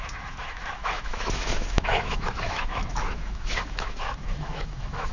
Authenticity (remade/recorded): remade